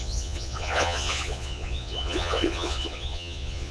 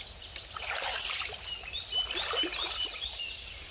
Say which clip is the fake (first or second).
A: first